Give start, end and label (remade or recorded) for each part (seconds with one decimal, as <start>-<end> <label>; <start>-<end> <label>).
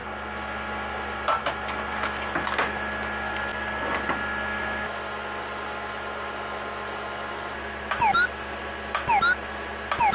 0.0-10.1 recorded